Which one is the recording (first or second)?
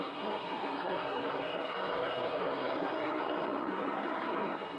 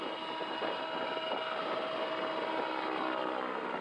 second